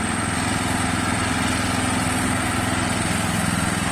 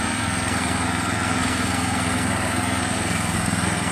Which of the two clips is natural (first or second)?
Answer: first